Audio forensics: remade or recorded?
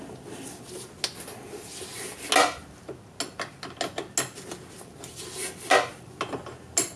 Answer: recorded